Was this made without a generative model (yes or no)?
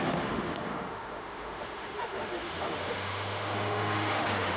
no